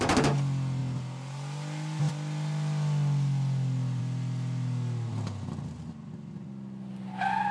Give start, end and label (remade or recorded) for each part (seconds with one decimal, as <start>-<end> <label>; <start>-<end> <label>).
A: 0.0-7.5 recorded